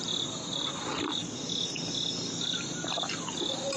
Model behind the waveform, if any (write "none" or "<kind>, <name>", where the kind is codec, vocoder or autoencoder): none